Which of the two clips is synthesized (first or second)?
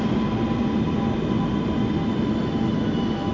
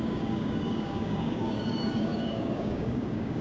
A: second